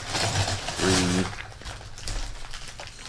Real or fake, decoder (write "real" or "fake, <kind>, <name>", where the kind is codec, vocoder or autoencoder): real